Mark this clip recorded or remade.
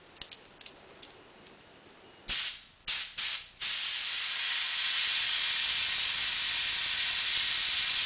recorded